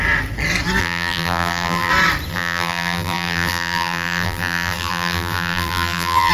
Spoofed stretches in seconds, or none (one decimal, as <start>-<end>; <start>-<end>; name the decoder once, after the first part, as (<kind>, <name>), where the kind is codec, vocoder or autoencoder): 0.8-1.9 (vocoder, BigVGAN v2); 2.3-6.3